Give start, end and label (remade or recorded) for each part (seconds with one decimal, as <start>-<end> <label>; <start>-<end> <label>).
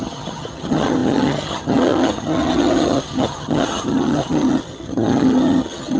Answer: 0.0-6.0 remade